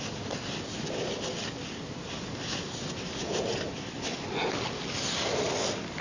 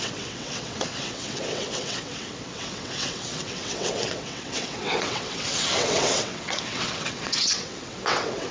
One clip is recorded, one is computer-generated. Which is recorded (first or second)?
first